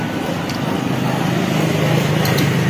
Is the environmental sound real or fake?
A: real